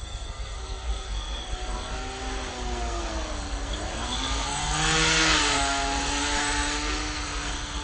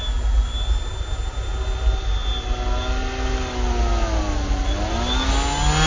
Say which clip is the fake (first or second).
first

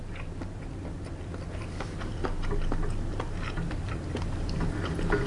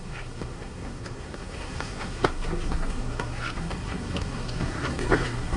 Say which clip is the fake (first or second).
second